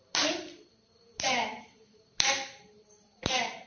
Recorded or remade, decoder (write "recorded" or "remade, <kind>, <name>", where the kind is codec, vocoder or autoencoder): remade, vocoder, BigVGAN v2